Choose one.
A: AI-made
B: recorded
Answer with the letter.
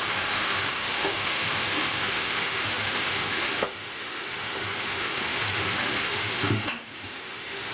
A